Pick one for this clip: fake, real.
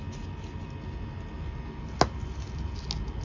real